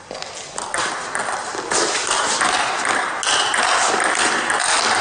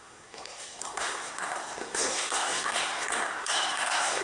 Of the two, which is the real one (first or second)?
first